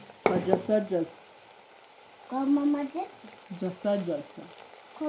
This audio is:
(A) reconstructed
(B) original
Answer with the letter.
B